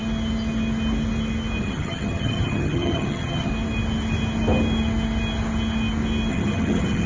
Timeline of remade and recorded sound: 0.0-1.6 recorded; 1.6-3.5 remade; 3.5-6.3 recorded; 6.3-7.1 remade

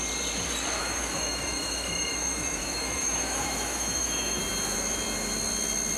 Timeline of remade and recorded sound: 0.0-0.8 recorded; 0.8-4.4 remade; 4.4-6.0 recorded

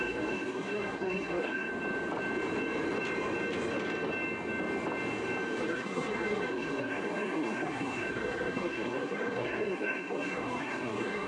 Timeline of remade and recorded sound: 0.0-1.7 remade; 1.7-5.6 recorded; 5.6-11.3 remade

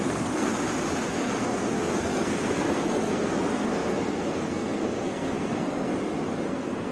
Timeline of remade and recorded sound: 0.0-0.5 remade; 0.5-1.1 recorded; 1.1-5.9 remade; 5.9-6.5 recorded; 6.5-6.9 remade

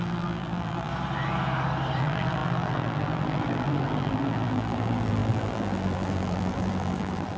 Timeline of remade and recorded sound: 0.0-0.9 remade; 0.9-2.0 recorded; 2.0-7.4 remade

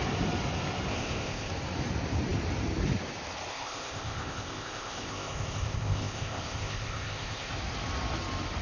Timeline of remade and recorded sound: 0.0-0.9 recorded; 0.9-1.5 remade; 1.5-3.5 recorded; 3.5-7.5 remade; 7.5-8.6 recorded

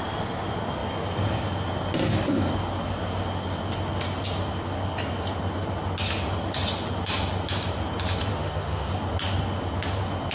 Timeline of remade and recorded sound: 0.0-8.3 recorded; 8.3-8.9 remade; 8.9-10.3 recorded